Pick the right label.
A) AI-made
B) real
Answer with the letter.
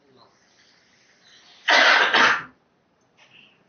B